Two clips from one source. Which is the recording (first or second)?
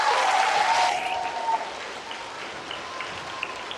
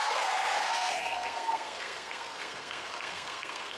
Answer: first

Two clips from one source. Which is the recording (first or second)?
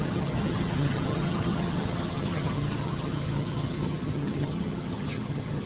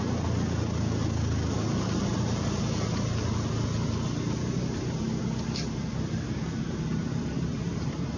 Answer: second